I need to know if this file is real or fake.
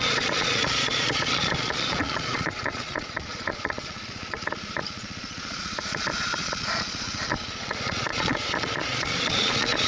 fake